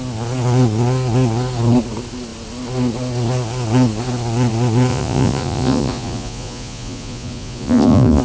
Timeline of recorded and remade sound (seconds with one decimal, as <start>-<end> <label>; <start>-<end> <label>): 0.0-4.9 recorded; 4.9-8.2 remade